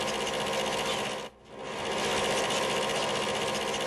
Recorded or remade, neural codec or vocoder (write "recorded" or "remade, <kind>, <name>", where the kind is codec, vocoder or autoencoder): recorded